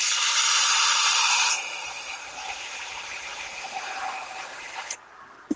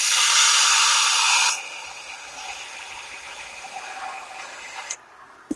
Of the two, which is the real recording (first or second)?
second